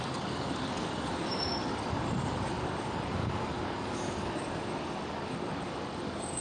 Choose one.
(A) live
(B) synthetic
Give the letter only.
B